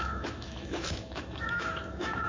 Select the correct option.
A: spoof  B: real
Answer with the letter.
A